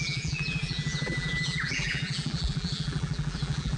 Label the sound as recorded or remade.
remade